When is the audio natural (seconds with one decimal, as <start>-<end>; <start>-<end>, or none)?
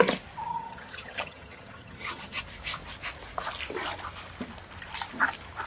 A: 0.0-0.5; 2.4-5.7